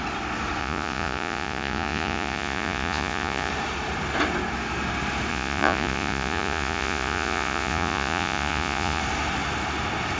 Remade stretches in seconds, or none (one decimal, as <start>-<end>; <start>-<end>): 0.6-3.5; 5.3-9.0